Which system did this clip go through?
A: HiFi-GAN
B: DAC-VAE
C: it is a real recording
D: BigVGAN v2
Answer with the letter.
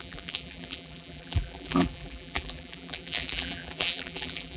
D